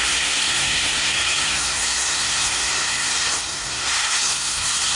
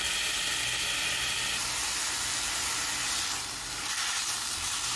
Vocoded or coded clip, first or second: first